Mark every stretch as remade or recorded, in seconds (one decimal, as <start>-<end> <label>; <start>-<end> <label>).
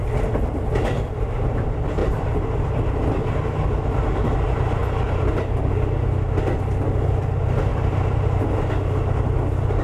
0.0-2.0 recorded; 2.0-2.7 remade; 2.7-7.7 recorded; 7.7-8.7 remade; 8.7-9.8 recorded